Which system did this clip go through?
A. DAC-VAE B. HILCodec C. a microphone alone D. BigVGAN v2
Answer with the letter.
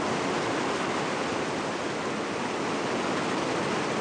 C